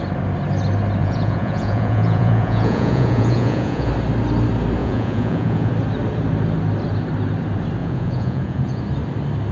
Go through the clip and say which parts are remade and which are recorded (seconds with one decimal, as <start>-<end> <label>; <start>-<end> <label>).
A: 0.0-1.0 recorded; 1.0-3.9 remade; 3.9-4.8 recorded; 4.8-5.7 remade; 5.7-7.8 recorded; 7.8-8.8 remade; 8.8-9.5 recorded